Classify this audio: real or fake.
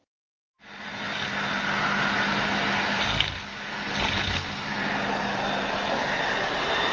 real